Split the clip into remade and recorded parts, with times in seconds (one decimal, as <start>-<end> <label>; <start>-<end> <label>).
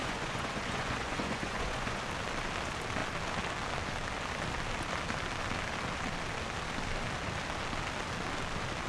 0.0-2.0 remade; 2.0-8.9 recorded